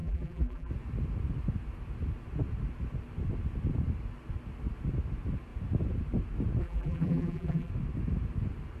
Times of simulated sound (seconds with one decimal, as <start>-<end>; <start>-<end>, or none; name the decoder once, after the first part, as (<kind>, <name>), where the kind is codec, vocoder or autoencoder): 0.0-0.7 (vocoder, BigVGAN v2); 6.6-7.7